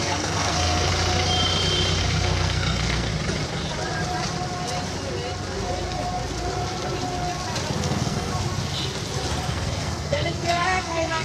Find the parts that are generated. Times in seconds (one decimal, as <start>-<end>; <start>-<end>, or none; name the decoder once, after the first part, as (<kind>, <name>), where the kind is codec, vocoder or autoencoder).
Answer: 0.0-0.9 (codec, SNAC); 2.0-3.1; 7.8-8.3; 9.5-11.2